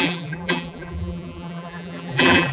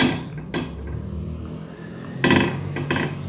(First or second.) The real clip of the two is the second